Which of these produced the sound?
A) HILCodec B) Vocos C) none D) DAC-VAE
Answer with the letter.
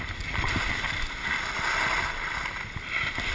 C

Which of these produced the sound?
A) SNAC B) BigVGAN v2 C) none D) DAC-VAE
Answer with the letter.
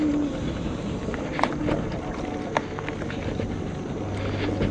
C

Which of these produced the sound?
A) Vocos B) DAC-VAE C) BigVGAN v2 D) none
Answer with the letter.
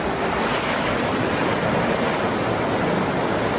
D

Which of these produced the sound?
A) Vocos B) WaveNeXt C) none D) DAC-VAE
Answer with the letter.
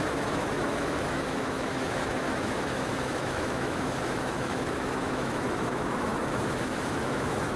D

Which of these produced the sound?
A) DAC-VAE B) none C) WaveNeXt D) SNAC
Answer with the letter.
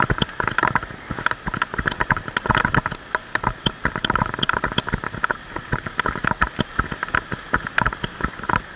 B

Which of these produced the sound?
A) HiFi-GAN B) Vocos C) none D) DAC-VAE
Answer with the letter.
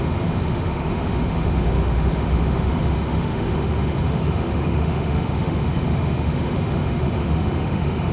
D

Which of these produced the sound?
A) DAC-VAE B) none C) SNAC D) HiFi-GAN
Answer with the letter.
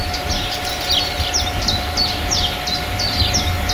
B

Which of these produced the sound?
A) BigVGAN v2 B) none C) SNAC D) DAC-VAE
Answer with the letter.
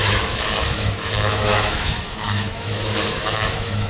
D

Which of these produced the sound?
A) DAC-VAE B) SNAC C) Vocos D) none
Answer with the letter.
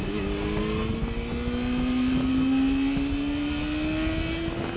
D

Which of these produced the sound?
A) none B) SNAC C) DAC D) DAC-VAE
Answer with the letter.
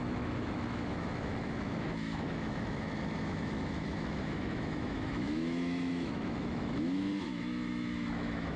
D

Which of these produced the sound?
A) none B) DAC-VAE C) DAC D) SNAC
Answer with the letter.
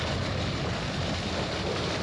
A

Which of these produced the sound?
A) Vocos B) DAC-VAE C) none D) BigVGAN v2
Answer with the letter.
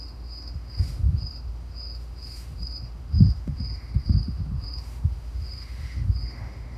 B